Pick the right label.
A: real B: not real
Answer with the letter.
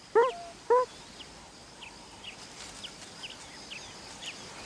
A